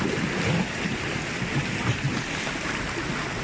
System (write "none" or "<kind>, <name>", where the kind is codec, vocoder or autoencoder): none